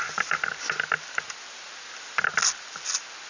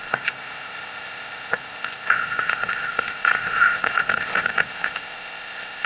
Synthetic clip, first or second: second